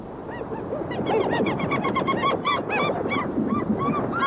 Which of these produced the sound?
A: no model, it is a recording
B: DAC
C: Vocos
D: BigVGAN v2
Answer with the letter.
A